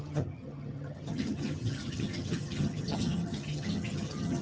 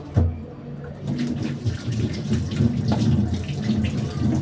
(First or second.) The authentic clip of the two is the second